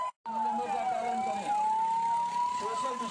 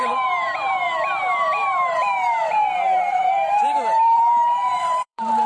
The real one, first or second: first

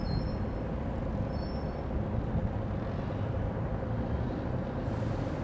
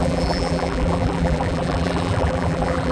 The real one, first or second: first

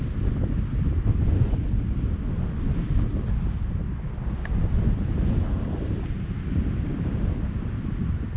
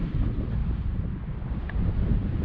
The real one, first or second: first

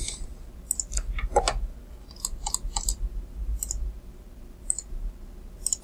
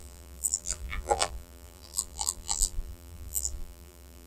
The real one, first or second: first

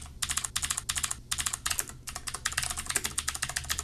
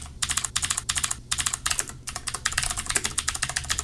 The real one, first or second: first